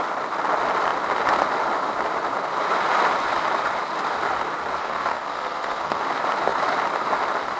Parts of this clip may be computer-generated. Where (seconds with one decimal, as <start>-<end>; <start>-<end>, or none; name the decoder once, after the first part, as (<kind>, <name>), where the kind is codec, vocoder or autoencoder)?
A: 4.8-6.0 (codec, SNAC)